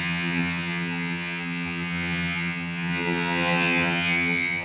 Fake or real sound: fake